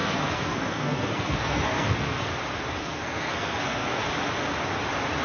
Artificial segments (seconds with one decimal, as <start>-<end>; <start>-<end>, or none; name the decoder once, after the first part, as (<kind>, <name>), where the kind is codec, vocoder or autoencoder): 0.0-2.3 (codec, SNAC); 2.8-4.0